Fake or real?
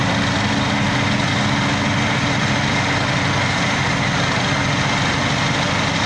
real